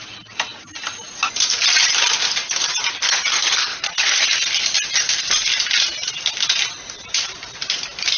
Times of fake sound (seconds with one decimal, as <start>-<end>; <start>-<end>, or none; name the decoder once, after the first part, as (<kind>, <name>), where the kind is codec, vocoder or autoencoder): none